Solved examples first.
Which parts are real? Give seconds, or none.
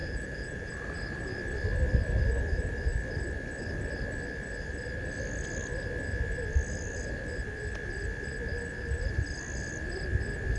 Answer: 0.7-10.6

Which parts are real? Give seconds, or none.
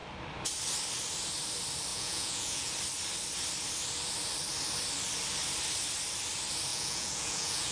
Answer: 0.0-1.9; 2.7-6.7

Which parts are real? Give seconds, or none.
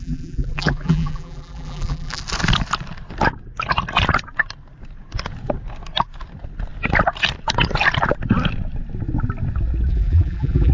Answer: 2.2-9.9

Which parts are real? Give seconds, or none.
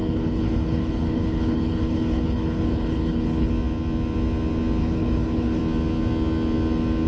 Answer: 3.5-4.8; 5.6-7.1